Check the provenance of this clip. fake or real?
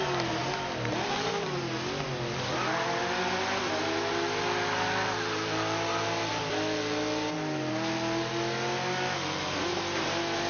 real